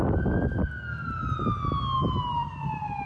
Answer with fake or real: real